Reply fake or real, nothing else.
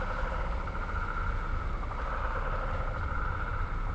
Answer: real